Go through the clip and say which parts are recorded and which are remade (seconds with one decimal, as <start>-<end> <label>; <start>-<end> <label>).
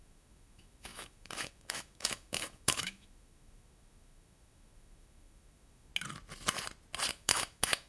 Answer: 0.0-5.9 remade; 5.9-7.1 recorded; 7.1-7.9 remade